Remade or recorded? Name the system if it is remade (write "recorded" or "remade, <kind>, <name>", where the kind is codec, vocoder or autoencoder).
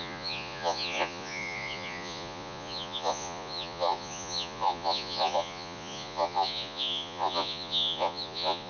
remade, vocoder, Vocos